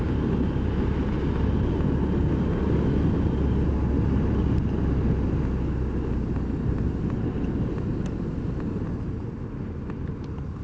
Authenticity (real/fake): real